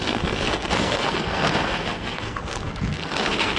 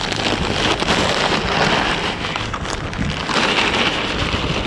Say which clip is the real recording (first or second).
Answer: second